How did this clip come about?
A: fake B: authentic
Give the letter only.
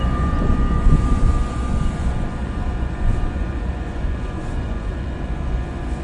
A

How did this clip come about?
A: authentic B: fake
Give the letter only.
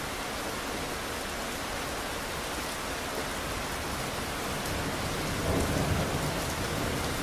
A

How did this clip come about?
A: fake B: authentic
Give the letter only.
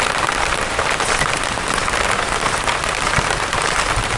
B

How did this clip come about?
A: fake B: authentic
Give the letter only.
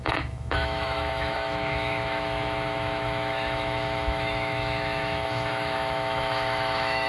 A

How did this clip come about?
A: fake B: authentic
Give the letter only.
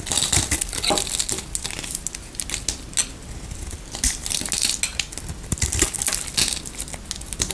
B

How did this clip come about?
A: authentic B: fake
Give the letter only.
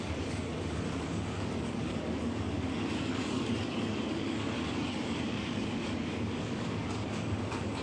B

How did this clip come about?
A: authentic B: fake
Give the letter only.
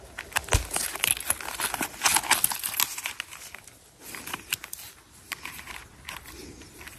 A